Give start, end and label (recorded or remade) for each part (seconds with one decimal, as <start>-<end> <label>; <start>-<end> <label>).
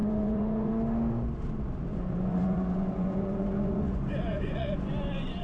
0.0-0.7 remade; 0.7-1.9 recorded; 1.9-5.4 remade